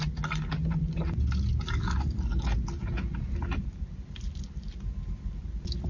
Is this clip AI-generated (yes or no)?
no